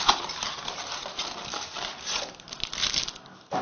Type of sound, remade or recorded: recorded